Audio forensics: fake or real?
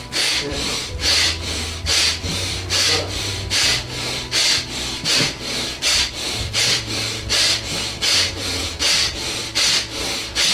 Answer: fake